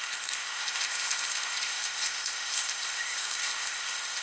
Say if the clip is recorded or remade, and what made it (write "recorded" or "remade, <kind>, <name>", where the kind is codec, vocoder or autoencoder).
remade, codec, ZipCodec